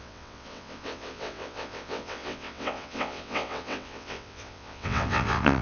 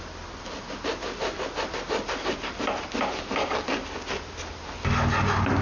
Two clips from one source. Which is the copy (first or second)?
first